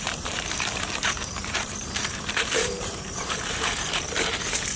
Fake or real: fake